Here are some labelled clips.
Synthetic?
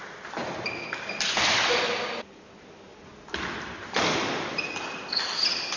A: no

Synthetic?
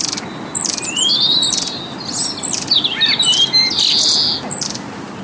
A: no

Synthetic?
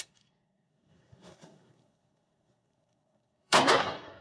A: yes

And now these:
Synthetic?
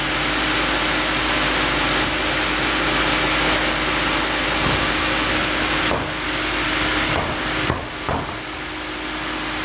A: no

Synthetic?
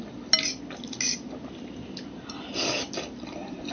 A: no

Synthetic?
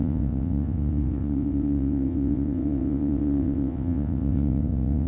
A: yes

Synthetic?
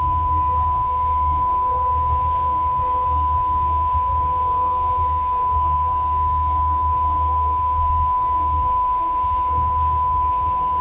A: yes